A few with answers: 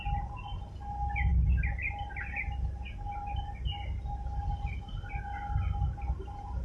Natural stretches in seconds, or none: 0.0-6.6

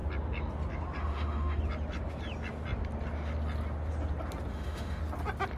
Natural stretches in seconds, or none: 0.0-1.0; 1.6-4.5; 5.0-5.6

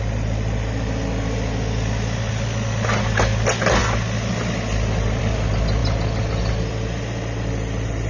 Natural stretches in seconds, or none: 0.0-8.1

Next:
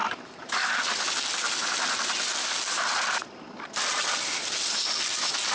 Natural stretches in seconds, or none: 0.0-5.5

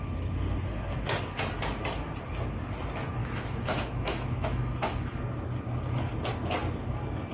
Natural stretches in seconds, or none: 0.0-3.2; 5.2-7.3

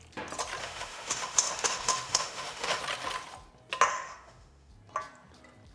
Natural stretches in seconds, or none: 0.0-0.6; 2.8-3.9; 4.7-5.7